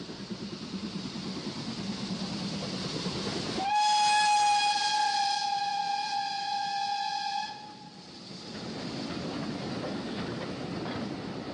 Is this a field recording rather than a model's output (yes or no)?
yes